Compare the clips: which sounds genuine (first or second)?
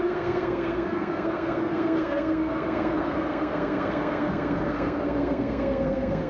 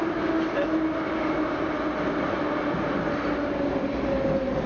second